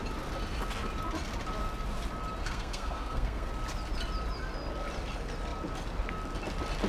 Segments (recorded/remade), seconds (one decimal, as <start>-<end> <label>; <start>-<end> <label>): 0.0-2.4 recorded; 2.4-3.5 remade; 3.5-6.9 recorded